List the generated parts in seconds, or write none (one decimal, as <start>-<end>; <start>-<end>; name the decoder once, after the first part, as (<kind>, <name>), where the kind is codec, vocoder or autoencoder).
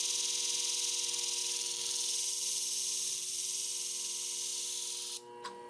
1.4-3.7 (vocoder, BigVGAN v2)